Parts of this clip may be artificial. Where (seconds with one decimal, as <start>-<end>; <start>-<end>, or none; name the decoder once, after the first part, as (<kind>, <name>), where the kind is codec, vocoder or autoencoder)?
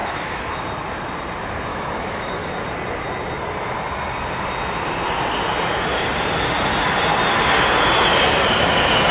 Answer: 0.0-0.6 (autoencoder, DAC-VAE); 1.7-2.5